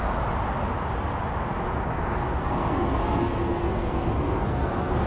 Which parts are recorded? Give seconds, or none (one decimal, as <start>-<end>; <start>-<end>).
0.0-1.9